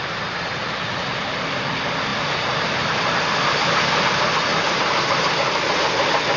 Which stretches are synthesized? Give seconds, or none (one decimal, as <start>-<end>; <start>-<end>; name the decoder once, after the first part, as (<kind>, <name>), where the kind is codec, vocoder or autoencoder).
0.6-1.7 (vocoder, BigVGAN v2); 4.5-5.3